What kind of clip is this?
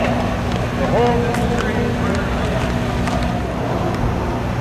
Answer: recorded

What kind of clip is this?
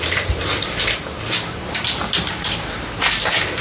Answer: recorded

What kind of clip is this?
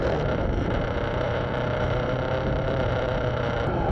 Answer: remade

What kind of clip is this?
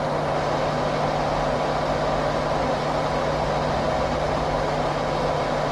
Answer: recorded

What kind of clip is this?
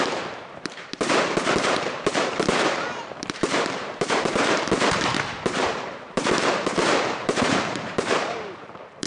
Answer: remade